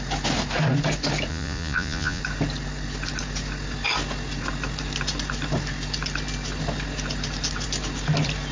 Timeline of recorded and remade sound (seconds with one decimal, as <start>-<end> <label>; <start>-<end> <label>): 0.0-1.3 recorded; 1.3-2.2 remade; 2.2-8.5 recorded